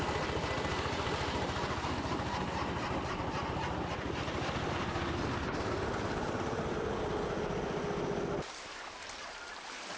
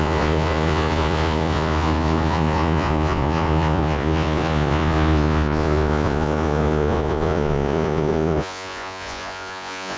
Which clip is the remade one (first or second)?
second